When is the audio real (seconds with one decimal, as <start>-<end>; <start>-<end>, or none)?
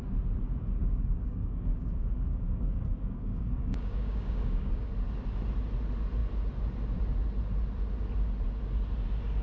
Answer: 0.0-0.8; 4.9-9.4